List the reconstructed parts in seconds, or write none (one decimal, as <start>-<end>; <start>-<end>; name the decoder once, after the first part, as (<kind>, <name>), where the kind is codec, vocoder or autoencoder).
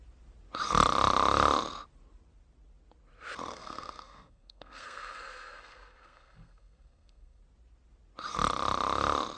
3.5-7.4 (codec, SNAC)